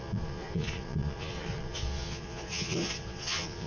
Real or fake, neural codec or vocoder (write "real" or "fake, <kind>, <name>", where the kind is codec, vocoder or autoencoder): fake, vocoder, Vocos